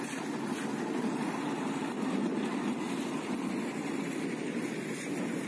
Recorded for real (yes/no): yes